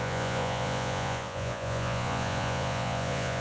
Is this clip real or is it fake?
fake